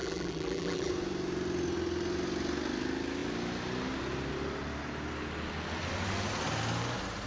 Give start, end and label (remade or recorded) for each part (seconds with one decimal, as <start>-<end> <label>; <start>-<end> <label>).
0.0-0.9 remade; 0.9-7.3 recorded